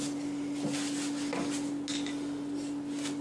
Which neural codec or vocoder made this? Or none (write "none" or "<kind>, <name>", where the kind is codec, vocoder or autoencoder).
none